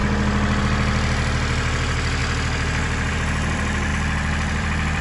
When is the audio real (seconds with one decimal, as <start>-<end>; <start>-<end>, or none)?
0.0-0.6; 2.2-3.1